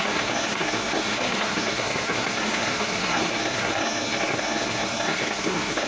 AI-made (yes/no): yes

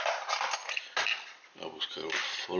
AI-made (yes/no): no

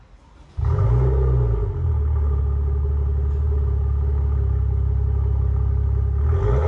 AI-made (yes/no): no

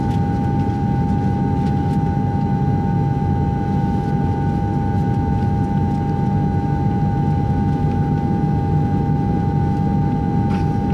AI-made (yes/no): no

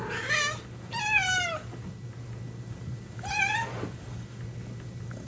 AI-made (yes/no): no